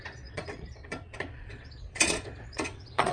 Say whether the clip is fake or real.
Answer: fake